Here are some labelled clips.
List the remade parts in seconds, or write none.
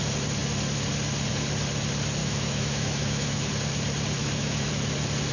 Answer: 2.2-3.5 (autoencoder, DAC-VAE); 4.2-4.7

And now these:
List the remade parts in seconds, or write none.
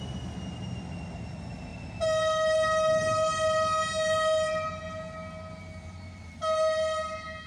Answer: none